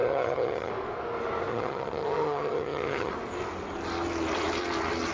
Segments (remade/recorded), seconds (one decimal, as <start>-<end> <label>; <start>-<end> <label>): 0.0-0.7 remade; 0.7-1.5 recorded; 1.5-3.1 remade; 3.1-5.1 recorded